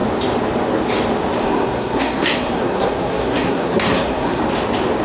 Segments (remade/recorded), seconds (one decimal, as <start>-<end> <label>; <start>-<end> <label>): 0.0-1.4 recorded; 1.4-4.4 remade; 4.4-5.0 recorded